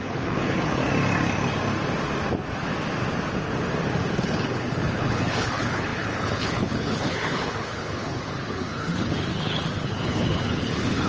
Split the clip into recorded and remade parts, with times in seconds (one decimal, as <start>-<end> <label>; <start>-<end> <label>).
0.0-0.8 remade; 0.8-4.1 recorded; 4.1-11.1 remade